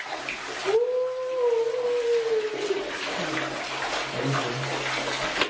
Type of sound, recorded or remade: recorded